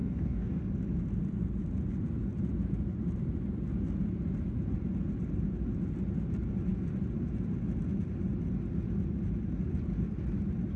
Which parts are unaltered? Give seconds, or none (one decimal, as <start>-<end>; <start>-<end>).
0.6-10.8